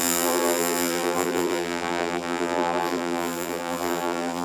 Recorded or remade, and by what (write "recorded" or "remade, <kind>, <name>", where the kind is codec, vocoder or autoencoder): remade, vocoder, BigVGAN v2